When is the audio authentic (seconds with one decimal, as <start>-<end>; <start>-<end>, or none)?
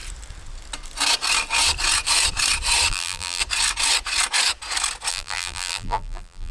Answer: 0.0-2.9; 3.4-5.1